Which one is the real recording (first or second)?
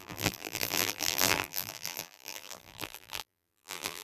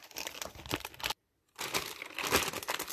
second